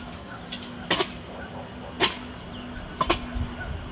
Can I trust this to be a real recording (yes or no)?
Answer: yes